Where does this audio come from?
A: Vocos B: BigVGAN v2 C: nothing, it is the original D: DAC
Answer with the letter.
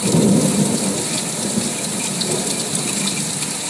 C